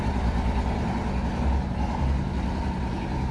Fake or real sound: real